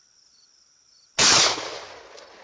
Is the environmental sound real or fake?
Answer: real